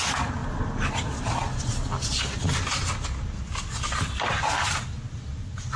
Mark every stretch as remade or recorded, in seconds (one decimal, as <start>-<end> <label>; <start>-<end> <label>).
0.0-5.8 recorded